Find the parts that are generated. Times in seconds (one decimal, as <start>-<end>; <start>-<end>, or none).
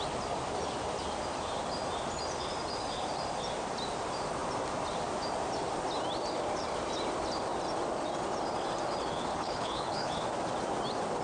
9.3-10.1